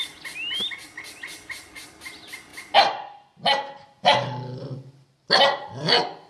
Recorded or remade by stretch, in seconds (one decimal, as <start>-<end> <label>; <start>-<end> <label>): 0.0-6.3 recorded